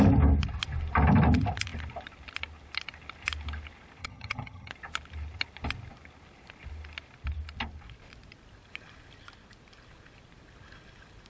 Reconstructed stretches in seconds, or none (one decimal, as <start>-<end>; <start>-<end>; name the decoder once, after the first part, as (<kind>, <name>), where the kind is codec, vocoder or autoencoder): 4.0-4.7 (vocoder, HiFi-GAN)